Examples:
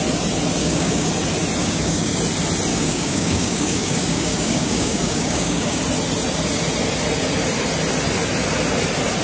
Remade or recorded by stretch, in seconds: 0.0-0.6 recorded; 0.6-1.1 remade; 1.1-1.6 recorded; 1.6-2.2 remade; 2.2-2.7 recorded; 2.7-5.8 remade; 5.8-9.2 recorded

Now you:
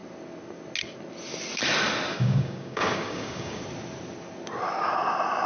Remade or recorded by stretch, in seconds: 0.0-2.1 recorded; 2.1-3.6 remade; 3.6-5.5 recorded

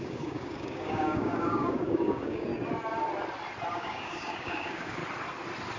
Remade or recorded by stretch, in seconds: 0.0-2.5 remade; 2.5-3.7 recorded; 3.7-5.0 remade; 5.0-5.8 recorded

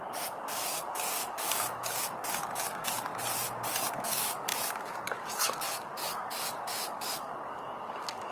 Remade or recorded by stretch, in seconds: 0.0-3.1 remade; 3.1-3.9 recorded; 3.9-8.3 remade

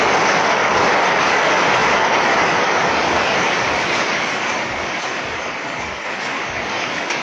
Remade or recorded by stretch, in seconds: 0.0-7.2 remade

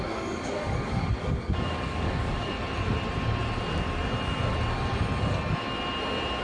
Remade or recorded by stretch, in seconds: 0.0-2.5 remade; 2.5-6.4 recorded